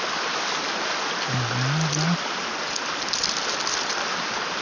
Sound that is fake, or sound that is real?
real